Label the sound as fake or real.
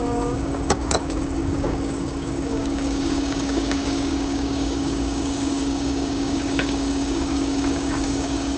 fake